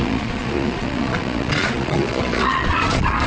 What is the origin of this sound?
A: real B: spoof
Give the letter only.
B